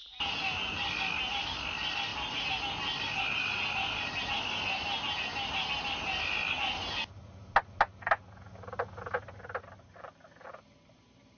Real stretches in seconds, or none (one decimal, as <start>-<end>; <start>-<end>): 0.0-11.4